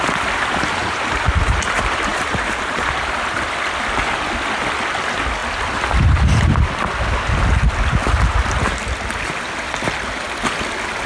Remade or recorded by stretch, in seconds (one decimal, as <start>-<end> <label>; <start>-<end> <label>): 0.0-0.8 recorded; 0.8-1.3 remade; 1.3-2.1 recorded; 2.1-2.9 remade; 2.9-11.1 recorded